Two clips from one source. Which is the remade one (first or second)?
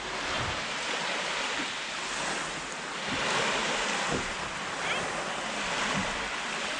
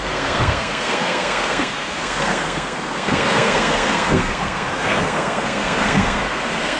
second